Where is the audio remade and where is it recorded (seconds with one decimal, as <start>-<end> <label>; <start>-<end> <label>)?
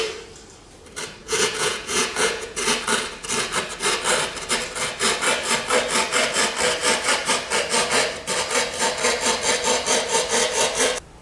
0.0-1.2 recorded; 1.2-2.6 remade; 2.6-11.2 recorded